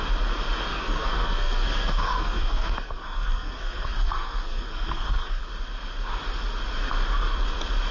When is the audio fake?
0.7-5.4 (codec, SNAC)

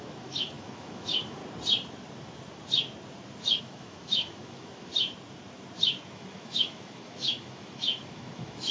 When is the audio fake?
0.0-1.4 (autoencoder, DAC-VAE); 3.6-4.9; 6.1-8.7